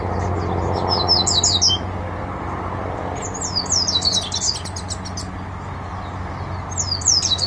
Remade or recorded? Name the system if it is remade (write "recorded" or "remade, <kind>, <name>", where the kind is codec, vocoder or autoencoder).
recorded